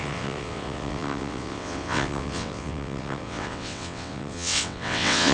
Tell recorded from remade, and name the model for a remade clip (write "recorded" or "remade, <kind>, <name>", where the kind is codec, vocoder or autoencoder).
remade, vocoder, WaveNeXt